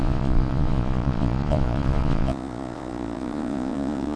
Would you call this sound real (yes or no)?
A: no